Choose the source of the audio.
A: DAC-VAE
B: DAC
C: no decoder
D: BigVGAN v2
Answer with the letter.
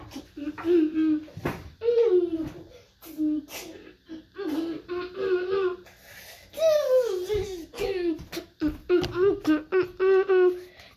C